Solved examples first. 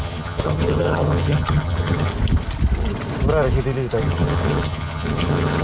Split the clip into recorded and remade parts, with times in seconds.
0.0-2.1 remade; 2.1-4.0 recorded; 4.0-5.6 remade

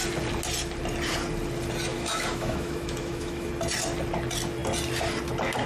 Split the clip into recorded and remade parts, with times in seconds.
0.0-1.9 recorded; 1.9-3.5 remade; 3.5-5.7 recorded

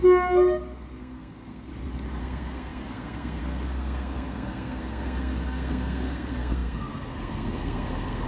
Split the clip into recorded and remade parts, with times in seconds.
0.0-1.0 recorded; 1.0-1.7 remade; 1.7-2.2 recorded; 2.2-8.3 remade

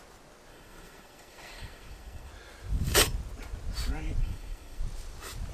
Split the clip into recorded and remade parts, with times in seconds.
0.0-0.5 recorded; 0.5-2.3 remade; 2.3-4.2 recorded; 4.2-4.8 remade; 4.8-5.5 recorded

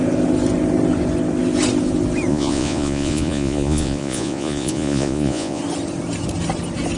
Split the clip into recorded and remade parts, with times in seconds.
0.0-2.3 recorded; 2.3-5.6 remade; 5.6-7.0 recorded